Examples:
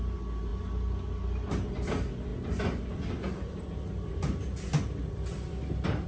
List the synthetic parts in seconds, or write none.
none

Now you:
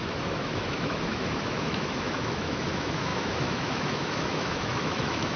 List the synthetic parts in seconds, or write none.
0.0-5.4 (autoencoder, DAC-VAE)

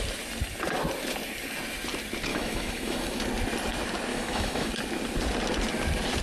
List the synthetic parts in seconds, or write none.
2.3-3.2 (autoencoder, DAC-VAE); 4.1-4.7

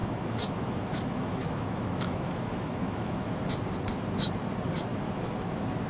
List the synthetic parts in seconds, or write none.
0.0-3.5 (autoencoder, DAC-VAE); 4.9-5.9